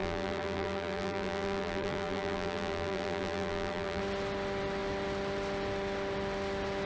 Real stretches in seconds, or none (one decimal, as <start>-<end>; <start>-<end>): 4.0-6.9